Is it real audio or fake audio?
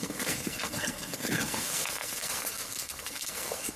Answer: fake